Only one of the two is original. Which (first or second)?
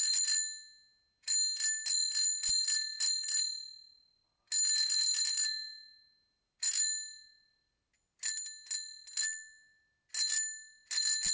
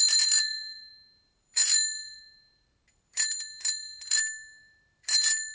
first